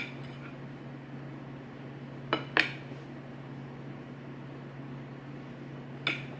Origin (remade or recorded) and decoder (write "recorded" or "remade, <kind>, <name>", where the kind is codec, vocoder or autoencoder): recorded